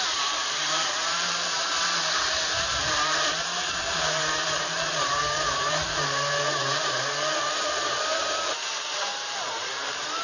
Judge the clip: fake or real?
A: fake